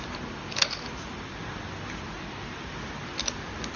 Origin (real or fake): real